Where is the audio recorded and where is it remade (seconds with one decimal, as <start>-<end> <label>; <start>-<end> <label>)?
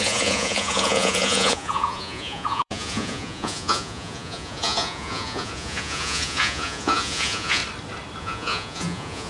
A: 0.0-7.6 remade; 7.6-8.2 recorded; 8.2-9.3 remade